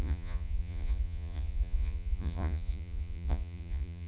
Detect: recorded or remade remade